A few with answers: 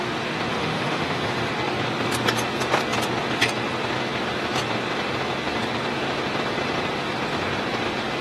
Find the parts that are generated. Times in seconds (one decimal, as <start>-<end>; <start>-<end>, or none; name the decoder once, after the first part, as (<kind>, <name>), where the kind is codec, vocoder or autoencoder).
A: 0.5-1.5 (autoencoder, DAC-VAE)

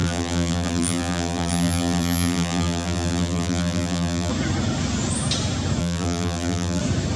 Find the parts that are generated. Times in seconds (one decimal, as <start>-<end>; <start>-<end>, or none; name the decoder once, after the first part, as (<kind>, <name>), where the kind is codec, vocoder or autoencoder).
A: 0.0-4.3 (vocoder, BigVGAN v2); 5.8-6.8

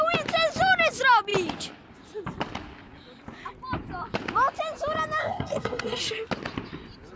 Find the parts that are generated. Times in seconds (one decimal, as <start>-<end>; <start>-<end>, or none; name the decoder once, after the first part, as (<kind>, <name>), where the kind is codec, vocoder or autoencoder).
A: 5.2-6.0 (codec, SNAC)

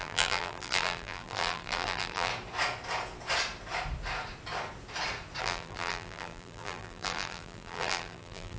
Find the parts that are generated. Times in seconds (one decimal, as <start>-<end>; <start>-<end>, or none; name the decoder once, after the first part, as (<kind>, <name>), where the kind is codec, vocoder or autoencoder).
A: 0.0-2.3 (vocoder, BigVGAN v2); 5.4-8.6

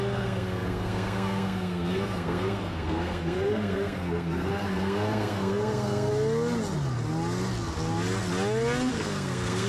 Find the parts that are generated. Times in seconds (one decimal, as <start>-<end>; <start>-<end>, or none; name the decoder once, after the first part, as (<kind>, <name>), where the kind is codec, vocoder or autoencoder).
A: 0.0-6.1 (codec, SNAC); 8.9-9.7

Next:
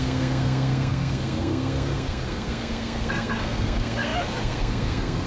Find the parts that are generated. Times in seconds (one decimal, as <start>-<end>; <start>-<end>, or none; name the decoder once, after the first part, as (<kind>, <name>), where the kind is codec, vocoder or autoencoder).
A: 0.0-5.3 (codec, SNAC)